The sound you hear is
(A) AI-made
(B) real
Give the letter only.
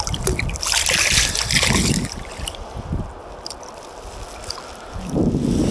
B